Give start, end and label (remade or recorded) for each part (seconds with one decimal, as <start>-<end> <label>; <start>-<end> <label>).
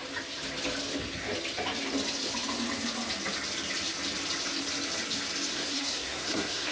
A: 0.0-5.5 recorded; 5.5-6.7 remade